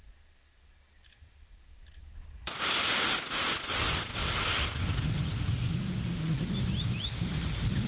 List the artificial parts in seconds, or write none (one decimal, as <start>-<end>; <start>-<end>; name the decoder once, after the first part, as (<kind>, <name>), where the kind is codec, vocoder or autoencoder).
none